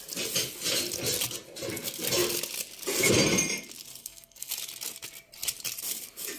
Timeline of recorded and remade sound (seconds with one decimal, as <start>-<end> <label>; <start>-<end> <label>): 0.0-4.0 recorded; 4.0-4.5 remade; 4.5-6.4 recorded

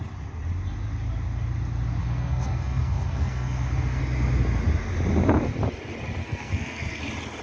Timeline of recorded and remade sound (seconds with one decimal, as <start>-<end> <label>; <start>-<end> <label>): 0.0-2.0 recorded; 2.0-4.0 remade; 4.0-6.2 recorded; 6.2-7.0 remade; 7.0-7.4 recorded

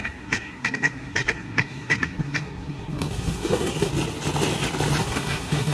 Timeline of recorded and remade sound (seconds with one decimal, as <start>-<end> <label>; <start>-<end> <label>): 0.0-3.9 remade; 3.9-5.0 recorded; 5.0-5.7 remade